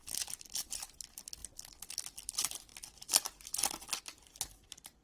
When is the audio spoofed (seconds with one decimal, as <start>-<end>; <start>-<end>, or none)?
0.6-2.7; 4.0-5.0